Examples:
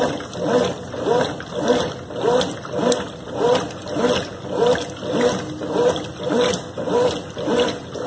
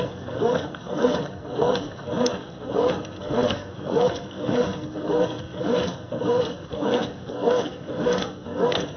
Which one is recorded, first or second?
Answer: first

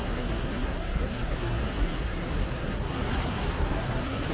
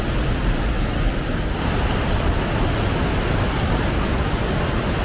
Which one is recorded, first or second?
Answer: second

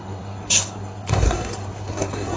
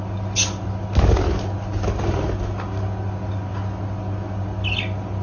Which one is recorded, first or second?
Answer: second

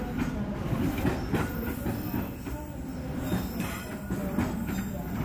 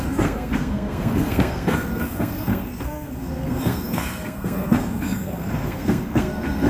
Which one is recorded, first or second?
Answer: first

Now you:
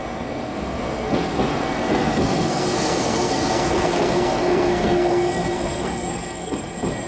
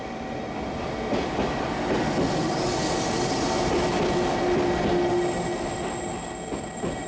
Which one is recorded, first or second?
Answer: second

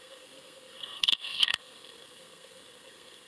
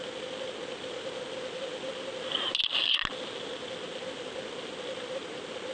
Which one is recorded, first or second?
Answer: second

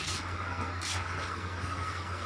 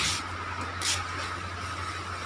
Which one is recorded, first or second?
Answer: second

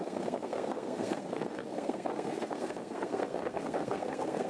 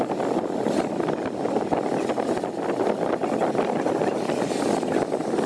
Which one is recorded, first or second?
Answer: second